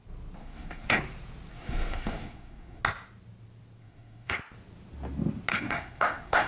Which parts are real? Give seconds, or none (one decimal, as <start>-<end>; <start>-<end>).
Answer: 0.0-0.4; 1.0-1.5; 2.8-3.8; 4.4-5.5